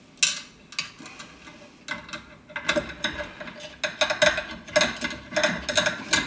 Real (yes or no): yes